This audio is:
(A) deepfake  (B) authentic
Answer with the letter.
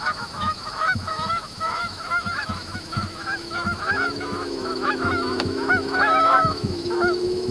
A